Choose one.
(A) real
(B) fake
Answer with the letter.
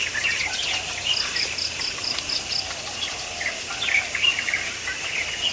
A